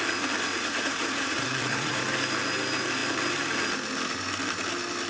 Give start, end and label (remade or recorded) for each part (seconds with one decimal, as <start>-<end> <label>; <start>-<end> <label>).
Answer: 0.0-0.5 recorded; 0.5-2.0 remade; 2.0-5.1 recorded